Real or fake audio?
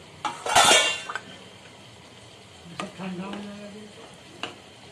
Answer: real